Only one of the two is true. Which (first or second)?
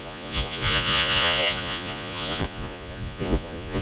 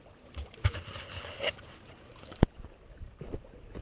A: second